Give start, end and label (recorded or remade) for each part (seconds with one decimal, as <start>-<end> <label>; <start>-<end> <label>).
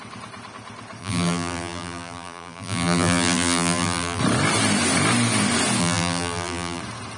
0.0-1.0 recorded; 1.0-4.2 remade; 4.2-5.8 recorded; 5.8-6.8 remade; 6.8-7.2 recorded